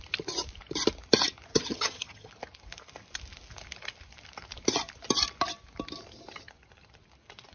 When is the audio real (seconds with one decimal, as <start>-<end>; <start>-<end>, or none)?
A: 0.0-1.5; 2.3-7.5